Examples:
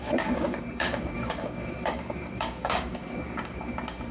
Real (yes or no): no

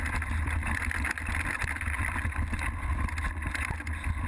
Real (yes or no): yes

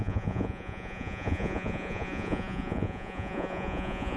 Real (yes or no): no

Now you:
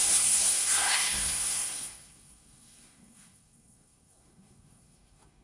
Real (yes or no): no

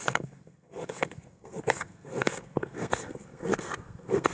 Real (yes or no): no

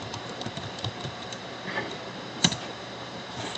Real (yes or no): no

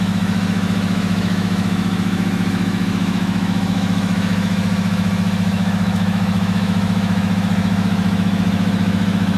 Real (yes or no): no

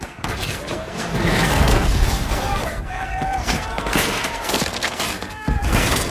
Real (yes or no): no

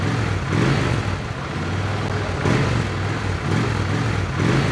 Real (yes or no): yes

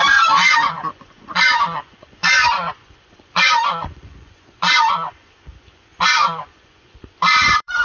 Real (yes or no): no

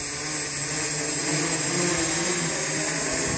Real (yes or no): yes